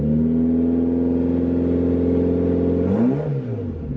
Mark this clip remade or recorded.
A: recorded